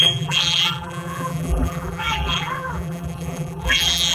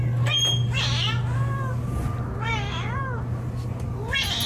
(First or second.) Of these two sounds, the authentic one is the second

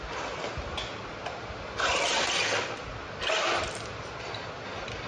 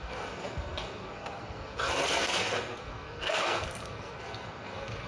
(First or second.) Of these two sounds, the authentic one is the first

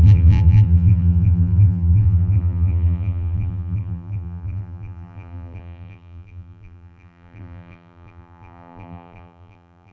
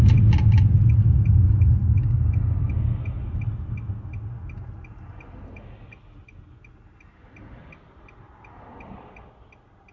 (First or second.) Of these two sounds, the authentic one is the second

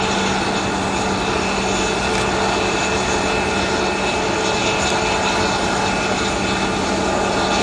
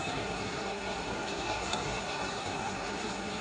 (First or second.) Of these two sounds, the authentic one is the first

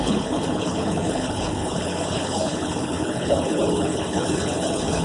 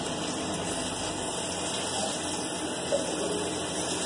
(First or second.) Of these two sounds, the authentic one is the second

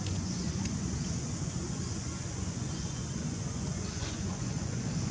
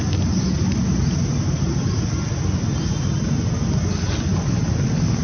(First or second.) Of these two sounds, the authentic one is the second